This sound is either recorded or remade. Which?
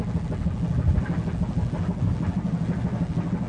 recorded